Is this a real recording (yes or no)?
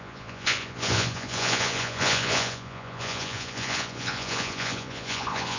no